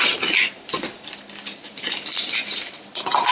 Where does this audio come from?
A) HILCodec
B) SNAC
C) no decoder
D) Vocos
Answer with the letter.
C